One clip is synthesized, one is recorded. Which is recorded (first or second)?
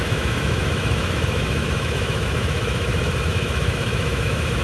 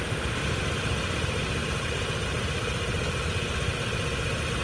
second